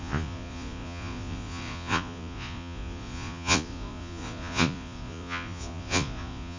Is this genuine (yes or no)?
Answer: no